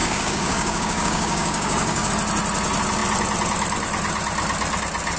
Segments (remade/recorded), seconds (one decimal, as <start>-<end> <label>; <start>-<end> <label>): 0.0-2.1 remade; 2.1-5.2 recorded